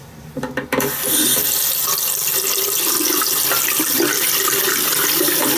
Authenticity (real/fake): real